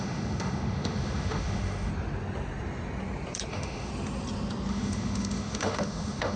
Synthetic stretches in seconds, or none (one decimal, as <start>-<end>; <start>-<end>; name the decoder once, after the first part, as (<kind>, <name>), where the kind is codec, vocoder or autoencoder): 0.0-1.9 (autoencoder, DAC-VAE); 3.5-3.9; 4.7-6.4